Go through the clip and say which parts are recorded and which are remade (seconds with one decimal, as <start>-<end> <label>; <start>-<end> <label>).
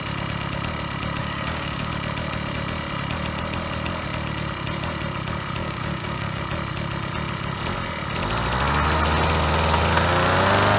0.0-1.2 recorded; 1.2-1.9 remade; 1.9-5.6 recorded; 5.6-6.4 remade; 6.4-10.8 recorded